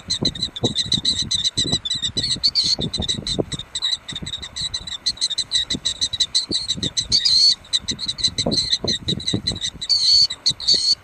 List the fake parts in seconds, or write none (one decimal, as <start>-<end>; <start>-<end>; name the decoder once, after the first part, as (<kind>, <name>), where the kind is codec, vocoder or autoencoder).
0.0-1.6 (codec, HILCodec); 2.2-11.0